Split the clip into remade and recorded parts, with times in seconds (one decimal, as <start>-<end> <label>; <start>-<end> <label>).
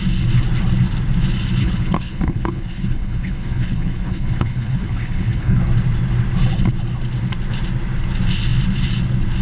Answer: 0.0-1.6 recorded; 1.6-5.6 remade; 5.6-9.4 recorded